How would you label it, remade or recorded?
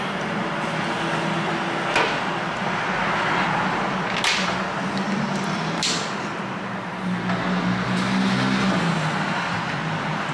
recorded